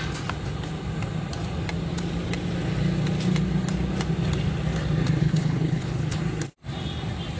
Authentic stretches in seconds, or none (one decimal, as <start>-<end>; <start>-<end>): 0.0-5.2; 6.2-7.4